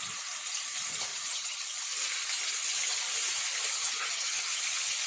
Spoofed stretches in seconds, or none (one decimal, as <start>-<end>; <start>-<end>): 1.1-1.6; 3.8-4.6